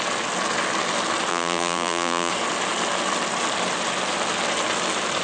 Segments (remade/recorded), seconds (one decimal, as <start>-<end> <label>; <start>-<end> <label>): 0.0-1.3 recorded; 1.3-2.3 remade; 2.3-5.2 recorded